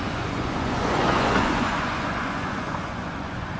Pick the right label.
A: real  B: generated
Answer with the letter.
B